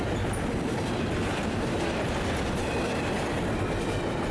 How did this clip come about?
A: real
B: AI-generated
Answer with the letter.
A